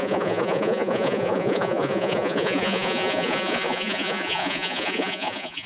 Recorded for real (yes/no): no